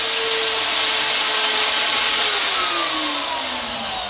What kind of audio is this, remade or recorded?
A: recorded